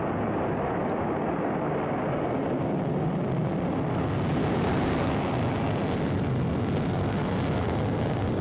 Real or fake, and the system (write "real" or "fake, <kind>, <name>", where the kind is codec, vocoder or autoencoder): real